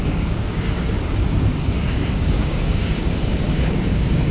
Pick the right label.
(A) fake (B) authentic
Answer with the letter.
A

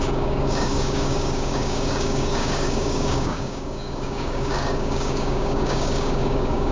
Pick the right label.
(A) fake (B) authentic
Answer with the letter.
A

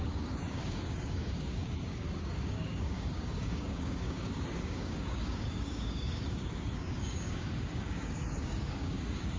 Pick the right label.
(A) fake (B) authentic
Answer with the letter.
A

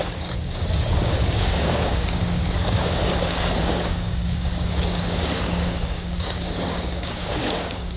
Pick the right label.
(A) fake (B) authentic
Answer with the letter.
A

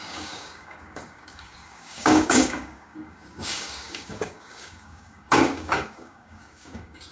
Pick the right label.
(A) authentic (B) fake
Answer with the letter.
B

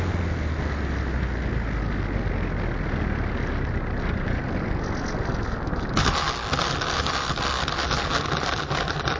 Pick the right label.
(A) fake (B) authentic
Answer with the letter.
B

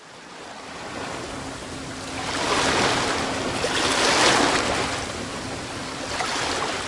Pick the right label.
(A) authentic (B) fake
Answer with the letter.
A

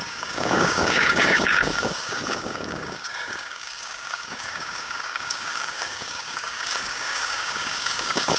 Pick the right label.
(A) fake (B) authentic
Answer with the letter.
A